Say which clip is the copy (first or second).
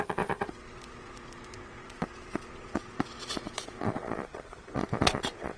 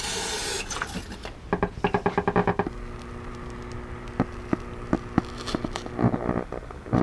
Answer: first